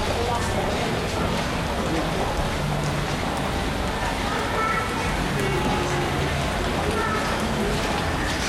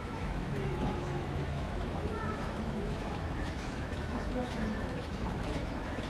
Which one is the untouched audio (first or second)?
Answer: first